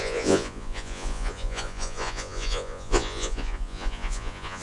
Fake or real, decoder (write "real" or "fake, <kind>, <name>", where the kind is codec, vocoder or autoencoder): fake, vocoder, Vocos